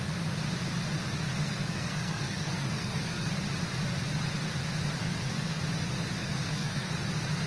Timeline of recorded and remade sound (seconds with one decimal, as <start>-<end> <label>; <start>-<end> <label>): 0.0-1.3 recorded; 1.3-3.3 remade; 3.3-5.0 recorded; 5.0-5.6 remade; 5.6-6.2 recorded; 6.2-6.9 remade; 6.9-7.5 recorded